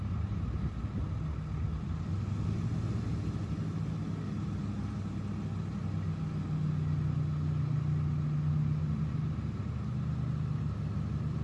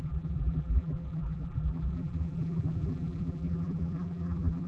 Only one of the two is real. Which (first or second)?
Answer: first